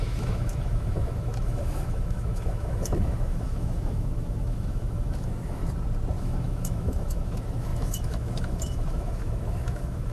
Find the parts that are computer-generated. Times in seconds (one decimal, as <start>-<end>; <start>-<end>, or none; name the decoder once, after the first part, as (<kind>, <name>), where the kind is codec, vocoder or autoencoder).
0.0-5.6 (autoencoder, DAC-VAE); 6.2-10.1

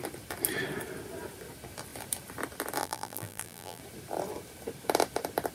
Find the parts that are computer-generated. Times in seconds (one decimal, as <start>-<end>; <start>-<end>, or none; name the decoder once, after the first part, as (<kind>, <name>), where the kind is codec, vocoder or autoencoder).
2.8-3.8 (vocoder, BigVGAN v2)

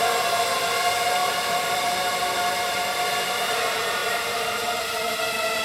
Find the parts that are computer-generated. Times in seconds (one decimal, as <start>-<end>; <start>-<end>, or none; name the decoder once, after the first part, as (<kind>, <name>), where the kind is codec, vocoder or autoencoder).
1.2-3.5 (vocoder, BigVGAN v2); 4.0-5.6

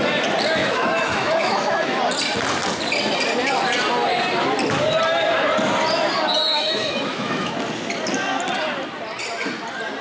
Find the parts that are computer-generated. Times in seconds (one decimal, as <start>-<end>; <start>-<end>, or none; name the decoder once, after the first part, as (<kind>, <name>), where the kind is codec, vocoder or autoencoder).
0.6-2.0 (autoencoder, DAC-VAE); 6.5-7.5

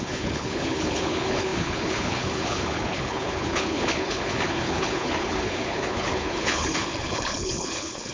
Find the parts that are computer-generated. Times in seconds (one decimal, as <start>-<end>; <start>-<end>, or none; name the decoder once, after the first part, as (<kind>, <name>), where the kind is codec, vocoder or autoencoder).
0.0-8.1 (codec, HILCodec)

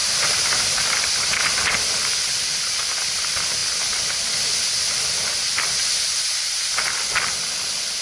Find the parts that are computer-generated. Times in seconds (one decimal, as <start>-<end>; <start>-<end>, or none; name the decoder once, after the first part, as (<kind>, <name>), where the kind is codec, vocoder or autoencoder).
none

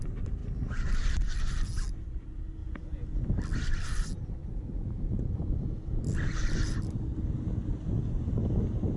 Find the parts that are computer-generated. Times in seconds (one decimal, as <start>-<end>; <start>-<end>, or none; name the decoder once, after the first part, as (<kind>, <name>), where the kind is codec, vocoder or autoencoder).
2.6-3.3 (vocoder, Vocos); 4.4-6.0

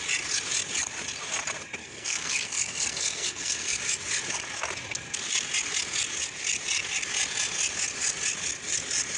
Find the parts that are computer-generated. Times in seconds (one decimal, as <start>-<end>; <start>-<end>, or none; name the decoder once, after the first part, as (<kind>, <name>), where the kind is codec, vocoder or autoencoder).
1.8-3.8 (codec, SNAC)